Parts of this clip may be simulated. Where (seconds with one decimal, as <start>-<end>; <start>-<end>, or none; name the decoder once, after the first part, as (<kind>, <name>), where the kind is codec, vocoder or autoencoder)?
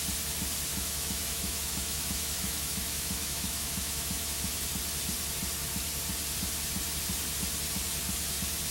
0.7-4.7 (autoencoder, DAC-VAE)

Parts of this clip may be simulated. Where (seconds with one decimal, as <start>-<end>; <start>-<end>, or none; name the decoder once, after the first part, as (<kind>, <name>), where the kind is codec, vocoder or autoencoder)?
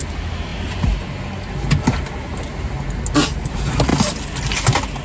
none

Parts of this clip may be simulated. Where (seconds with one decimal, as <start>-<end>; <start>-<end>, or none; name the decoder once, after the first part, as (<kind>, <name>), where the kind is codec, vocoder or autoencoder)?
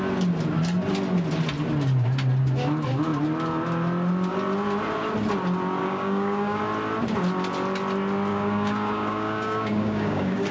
5.8-6.6 (codec, DAC); 8.3-10.5